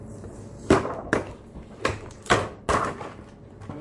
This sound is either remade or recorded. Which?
recorded